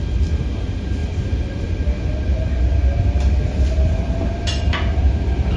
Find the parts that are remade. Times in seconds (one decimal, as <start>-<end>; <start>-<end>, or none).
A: none

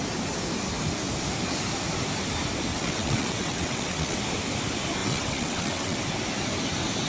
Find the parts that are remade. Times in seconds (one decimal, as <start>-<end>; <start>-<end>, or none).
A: 2.7-4.2; 5.0-6.0

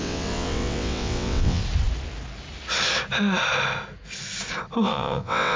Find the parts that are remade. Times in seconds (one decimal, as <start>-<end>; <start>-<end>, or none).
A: 0.0-1.6; 4.8-5.6

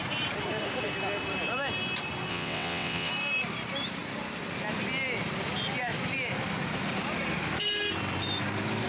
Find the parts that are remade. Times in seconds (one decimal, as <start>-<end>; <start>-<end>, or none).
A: 2.3-3.1

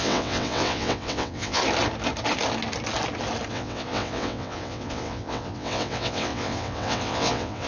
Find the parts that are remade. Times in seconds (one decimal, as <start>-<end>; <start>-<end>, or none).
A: 0.0-1.6; 3.5-7.7